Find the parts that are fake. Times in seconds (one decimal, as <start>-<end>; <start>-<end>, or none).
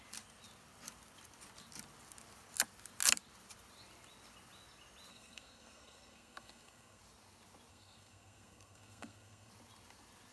5.1-7.0; 7.7-9.5